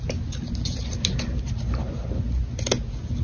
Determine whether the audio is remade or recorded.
recorded